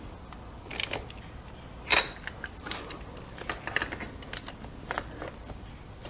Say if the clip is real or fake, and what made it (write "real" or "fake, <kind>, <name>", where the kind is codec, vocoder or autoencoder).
real